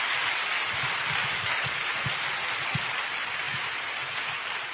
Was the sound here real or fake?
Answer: real